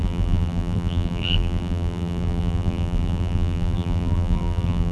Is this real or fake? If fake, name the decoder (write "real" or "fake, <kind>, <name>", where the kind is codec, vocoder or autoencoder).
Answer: fake, vocoder, BigVGAN v2